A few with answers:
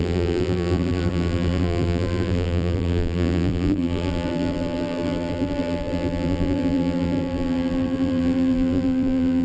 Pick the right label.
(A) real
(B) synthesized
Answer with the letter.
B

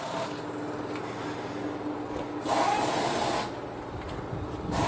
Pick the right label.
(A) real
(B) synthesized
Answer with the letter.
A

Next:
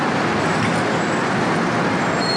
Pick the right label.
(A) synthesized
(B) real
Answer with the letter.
B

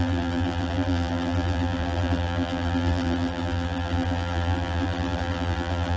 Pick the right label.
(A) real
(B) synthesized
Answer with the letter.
B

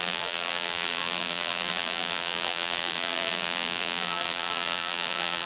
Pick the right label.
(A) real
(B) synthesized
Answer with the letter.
B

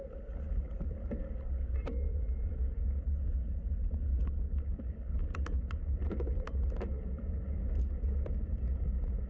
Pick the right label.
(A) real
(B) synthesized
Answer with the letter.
A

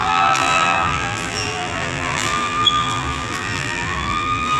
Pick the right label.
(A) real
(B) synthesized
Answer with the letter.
B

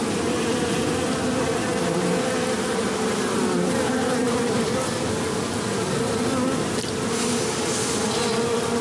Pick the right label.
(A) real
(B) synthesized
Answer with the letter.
B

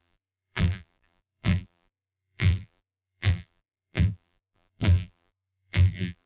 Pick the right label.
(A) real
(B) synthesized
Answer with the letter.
B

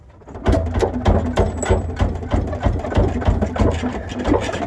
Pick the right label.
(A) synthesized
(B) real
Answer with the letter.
B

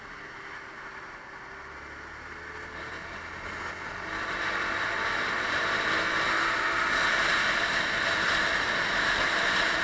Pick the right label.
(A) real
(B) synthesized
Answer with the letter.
A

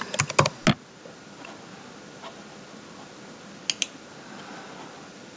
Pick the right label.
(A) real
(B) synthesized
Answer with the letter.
A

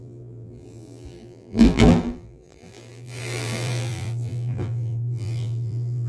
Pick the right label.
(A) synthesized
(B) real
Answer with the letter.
A